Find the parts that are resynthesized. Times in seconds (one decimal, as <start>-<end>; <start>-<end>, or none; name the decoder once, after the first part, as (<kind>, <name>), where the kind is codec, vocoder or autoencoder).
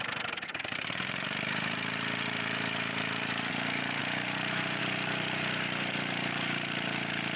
0.0-7.4 (vocoder, BigVGAN v2)